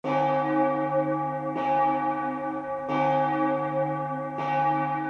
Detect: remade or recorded recorded